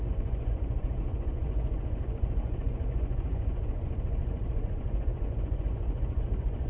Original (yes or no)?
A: no